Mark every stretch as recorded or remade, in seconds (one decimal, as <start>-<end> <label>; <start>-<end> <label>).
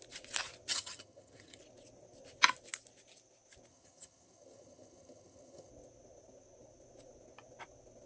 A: 0.0-0.7 recorded; 0.7-1.6 remade; 1.6-3.7 recorded; 3.7-5.7 remade; 5.7-8.1 recorded